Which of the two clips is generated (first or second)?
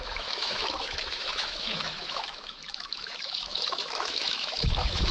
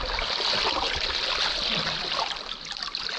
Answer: first